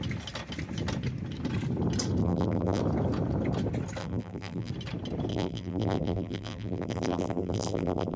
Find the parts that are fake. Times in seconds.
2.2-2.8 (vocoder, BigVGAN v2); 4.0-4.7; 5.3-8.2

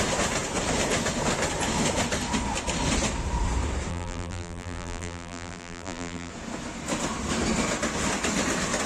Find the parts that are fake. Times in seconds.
3.9-6.3 (vocoder, BigVGAN v2)

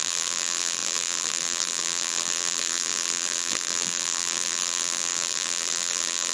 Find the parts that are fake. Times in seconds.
0.0-6.3 (vocoder, BigVGAN v2)

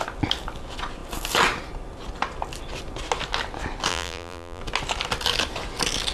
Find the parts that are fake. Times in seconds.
3.9-4.6 (vocoder, BigVGAN v2)

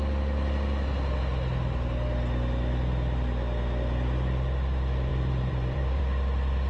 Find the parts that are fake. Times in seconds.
5.1-6.0 (vocoder, BigVGAN v2)

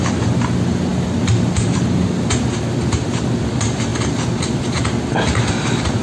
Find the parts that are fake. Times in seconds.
0.9-3.2 (vocoder, BigVGAN v2)

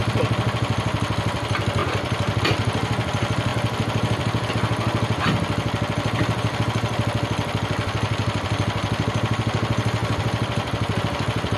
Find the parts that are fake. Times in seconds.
none